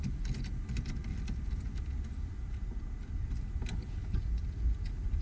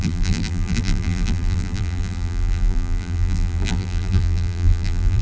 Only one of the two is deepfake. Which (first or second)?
second